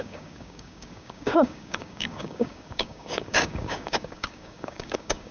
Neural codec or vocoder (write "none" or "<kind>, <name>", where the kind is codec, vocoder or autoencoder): codec, DAC